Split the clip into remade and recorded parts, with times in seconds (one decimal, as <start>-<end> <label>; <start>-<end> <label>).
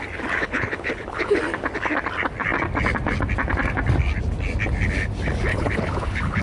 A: 0.0-0.4 recorded; 0.4-1.4 remade; 1.4-5.5 recorded; 5.5-6.4 remade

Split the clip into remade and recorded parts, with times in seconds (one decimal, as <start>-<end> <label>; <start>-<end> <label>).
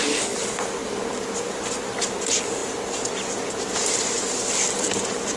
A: 0.0-5.4 recorded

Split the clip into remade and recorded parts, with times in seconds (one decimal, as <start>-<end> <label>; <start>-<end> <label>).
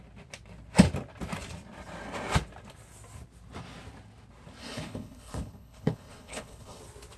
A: 0.0-4.6 recorded; 4.6-6.8 remade; 6.8-7.2 recorded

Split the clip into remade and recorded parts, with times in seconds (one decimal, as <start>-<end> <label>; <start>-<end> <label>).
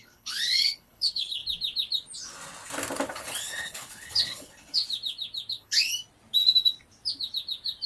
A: 0.0-1.4 remade; 1.4-3.1 recorded; 3.1-4.8 remade; 4.8-5.5 recorded; 5.5-5.9 remade; 5.9-7.9 recorded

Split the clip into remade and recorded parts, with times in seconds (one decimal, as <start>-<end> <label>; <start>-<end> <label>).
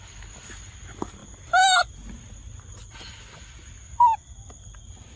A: 0.0-5.2 recorded